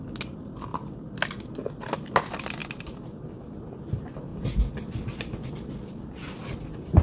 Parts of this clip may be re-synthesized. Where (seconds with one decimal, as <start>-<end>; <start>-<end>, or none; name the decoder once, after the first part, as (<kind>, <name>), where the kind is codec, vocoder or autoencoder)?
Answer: none